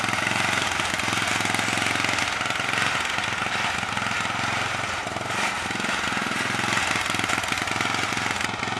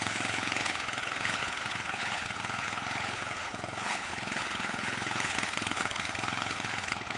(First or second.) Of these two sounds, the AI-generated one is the second